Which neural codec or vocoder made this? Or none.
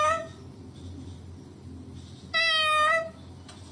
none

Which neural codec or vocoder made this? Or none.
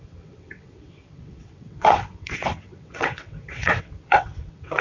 vocoder, WaveNeXt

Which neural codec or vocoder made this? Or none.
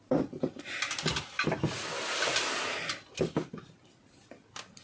none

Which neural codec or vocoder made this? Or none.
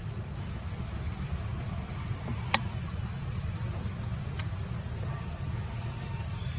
none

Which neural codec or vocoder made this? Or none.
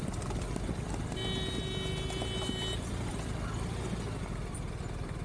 none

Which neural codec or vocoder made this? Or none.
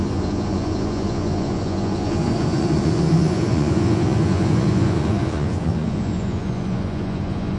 vocoder, Vocos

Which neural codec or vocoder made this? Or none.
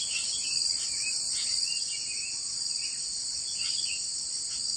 none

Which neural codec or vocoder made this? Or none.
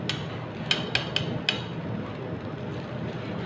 none